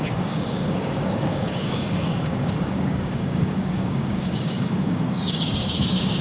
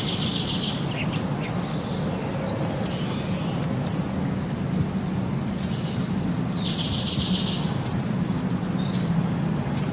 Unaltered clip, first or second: second